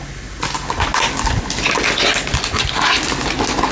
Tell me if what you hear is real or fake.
real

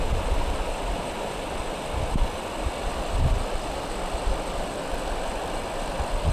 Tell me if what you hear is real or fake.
real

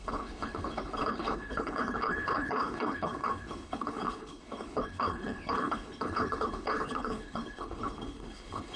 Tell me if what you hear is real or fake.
fake